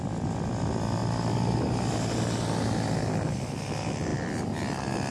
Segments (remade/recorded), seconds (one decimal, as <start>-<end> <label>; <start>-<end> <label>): 0.0-5.1 recorded